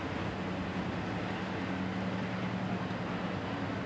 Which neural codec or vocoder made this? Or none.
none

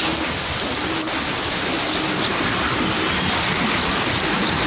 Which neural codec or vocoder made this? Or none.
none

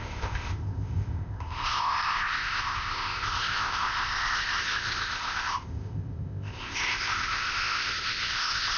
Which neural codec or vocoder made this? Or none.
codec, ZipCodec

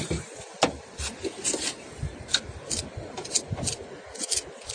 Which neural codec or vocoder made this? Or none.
none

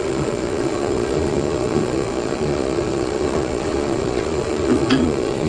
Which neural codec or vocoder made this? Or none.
vocoder, Vocos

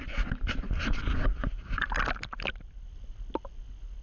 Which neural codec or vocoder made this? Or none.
none